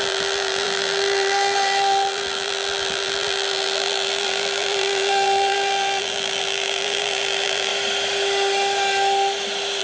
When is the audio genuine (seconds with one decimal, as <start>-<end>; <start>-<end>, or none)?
7.7-9.8